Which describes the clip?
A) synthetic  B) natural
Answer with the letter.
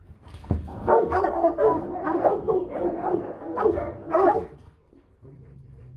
A